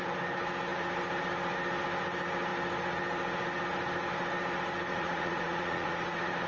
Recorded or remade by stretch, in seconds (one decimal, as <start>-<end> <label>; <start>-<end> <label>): 0.0-4.9 recorded; 4.9-6.5 remade